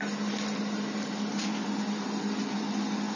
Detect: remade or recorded recorded